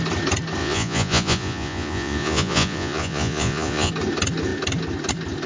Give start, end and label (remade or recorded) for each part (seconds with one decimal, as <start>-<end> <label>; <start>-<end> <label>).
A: 0.0-0.6 recorded; 0.6-3.9 remade; 3.9-5.5 recorded